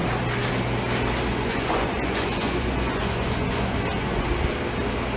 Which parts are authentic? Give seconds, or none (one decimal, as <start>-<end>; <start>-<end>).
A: 0.0-1.3; 4.3-5.2